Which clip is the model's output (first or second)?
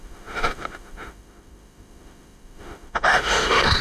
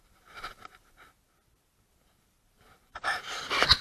first